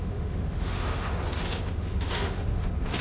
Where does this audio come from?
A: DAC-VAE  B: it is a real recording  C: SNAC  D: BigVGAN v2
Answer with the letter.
A